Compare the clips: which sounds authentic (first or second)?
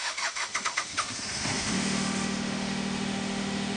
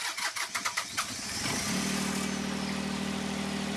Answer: second